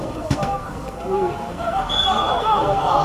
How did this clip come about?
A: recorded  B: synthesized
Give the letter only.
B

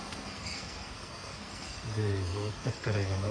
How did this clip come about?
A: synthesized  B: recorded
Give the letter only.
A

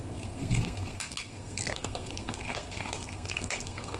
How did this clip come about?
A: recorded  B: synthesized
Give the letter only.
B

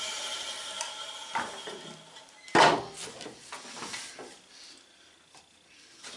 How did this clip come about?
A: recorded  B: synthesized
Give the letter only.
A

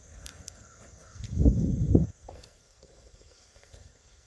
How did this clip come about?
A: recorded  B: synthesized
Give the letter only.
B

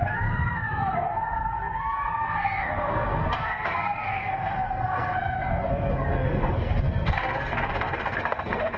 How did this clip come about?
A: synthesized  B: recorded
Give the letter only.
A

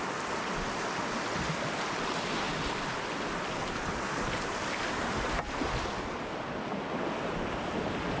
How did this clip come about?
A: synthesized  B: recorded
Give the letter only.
B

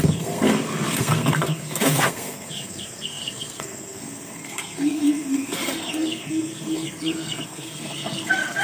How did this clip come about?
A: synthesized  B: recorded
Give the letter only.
A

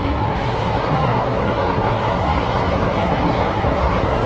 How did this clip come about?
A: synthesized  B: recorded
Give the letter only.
A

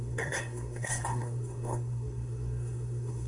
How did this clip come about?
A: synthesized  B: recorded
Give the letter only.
A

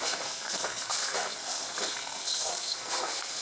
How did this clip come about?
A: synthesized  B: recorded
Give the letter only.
A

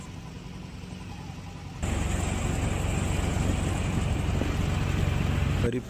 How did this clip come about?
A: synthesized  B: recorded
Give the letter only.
B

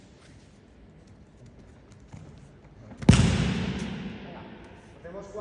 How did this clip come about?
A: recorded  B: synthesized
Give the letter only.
A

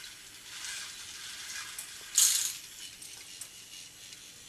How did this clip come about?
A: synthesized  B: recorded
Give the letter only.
B